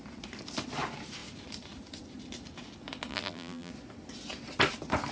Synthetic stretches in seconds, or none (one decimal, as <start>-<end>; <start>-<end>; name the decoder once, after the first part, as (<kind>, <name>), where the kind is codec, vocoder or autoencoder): 3.1-3.7 (vocoder, BigVGAN v2)

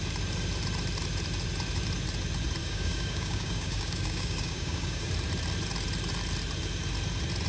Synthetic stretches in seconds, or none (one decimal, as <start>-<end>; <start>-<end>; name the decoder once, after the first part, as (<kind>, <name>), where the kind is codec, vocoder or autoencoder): 2.6-5.1 (codec, DAC)

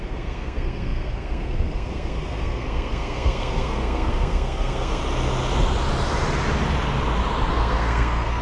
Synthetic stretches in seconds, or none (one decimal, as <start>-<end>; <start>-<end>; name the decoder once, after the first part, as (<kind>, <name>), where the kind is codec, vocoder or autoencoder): 0.0-5.0 (codec, SNAC); 7.5-8.4

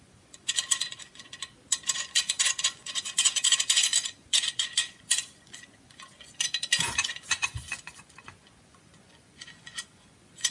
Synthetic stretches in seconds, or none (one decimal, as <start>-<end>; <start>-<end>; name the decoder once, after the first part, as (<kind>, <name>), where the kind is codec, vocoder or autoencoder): 0.0-1.5 (vocoder, Vocos); 2.0-10.5

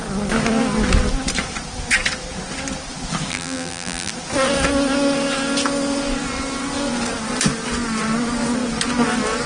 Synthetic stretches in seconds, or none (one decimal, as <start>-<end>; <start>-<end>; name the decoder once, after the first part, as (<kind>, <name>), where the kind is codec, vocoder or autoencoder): 3.3-4.1 (vocoder, BigVGAN v2)